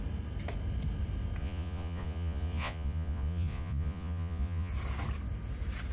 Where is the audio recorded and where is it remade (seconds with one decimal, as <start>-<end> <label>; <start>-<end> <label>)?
0.0-1.4 recorded; 1.4-4.7 remade; 4.7-5.9 recorded

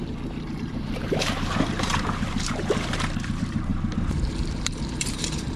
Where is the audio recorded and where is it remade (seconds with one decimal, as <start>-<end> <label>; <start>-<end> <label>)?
0.0-5.6 remade

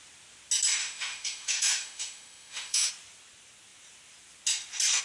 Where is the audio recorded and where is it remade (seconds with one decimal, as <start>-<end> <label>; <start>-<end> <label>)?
0.0-0.8 recorded; 0.8-2.9 remade; 2.9-5.0 recorded

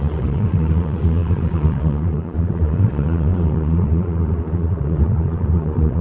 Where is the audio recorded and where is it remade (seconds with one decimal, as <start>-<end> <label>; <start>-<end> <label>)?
0.0-6.0 remade